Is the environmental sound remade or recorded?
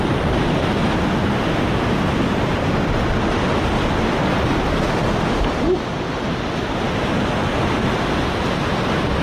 recorded